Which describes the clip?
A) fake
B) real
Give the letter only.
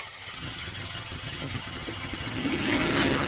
A